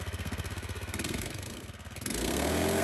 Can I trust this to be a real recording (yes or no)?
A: no